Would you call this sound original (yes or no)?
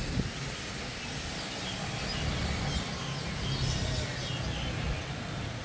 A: yes